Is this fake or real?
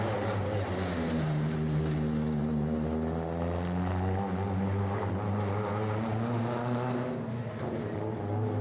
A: real